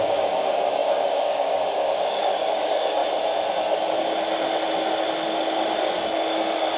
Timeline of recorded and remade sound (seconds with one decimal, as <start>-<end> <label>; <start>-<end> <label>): 0.0-3.0 remade; 3.0-5.8 recorded; 5.8-6.8 remade

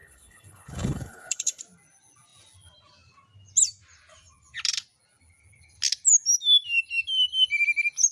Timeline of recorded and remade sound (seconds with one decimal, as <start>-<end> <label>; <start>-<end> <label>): 0.0-1.6 remade; 1.6-8.1 recorded